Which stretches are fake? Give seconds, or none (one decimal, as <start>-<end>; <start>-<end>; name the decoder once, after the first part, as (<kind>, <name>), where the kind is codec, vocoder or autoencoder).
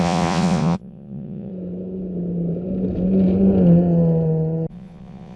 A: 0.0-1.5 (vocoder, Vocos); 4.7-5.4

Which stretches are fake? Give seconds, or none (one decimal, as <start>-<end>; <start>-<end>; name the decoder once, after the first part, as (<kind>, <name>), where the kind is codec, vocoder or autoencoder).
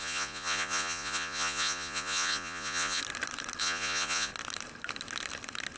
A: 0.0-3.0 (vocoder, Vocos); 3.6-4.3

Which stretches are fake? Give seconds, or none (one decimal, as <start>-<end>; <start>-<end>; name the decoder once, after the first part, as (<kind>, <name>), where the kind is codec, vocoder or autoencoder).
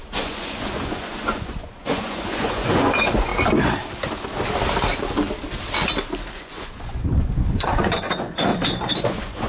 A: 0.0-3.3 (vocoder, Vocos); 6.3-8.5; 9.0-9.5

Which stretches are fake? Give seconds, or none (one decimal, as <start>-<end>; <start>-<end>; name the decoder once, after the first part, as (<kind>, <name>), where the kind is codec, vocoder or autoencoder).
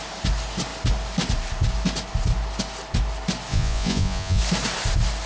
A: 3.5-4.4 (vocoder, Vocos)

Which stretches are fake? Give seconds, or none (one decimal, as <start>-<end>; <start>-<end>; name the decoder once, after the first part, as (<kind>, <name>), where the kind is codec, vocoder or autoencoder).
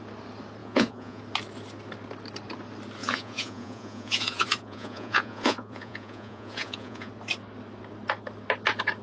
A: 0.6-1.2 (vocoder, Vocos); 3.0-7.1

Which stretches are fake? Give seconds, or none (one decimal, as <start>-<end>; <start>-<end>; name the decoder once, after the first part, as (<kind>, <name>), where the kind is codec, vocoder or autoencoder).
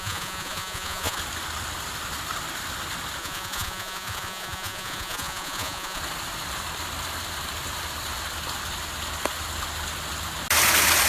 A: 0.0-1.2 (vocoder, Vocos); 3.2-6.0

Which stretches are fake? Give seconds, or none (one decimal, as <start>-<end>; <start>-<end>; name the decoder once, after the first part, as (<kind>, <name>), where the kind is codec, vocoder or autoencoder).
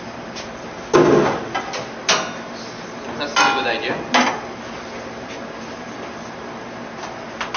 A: none